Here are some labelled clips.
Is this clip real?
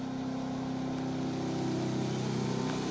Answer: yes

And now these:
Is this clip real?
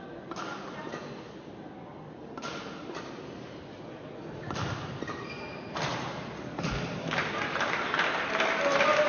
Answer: yes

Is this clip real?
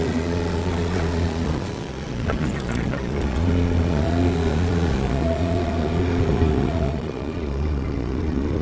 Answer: no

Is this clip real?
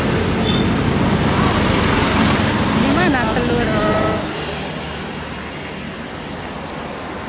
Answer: yes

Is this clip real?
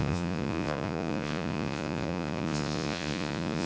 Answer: no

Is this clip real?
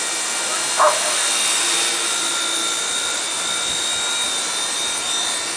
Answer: yes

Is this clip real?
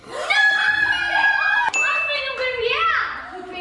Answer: yes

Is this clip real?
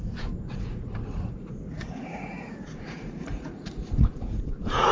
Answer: no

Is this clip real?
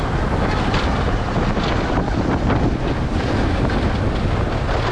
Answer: yes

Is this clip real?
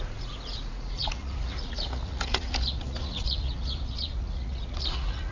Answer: no